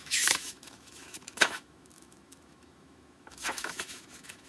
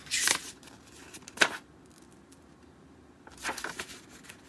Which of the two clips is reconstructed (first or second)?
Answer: first